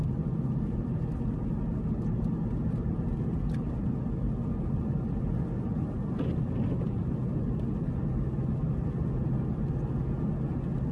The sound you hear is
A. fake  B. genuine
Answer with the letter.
B